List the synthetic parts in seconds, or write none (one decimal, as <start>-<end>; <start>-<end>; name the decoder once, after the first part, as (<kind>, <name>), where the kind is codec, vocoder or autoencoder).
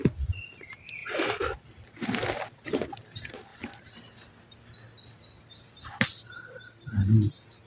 1.0-1.9 (vocoder, BigVGAN v2); 3.5-7.3